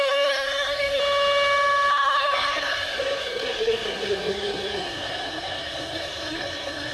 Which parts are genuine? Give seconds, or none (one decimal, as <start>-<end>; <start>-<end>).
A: 1.0-1.9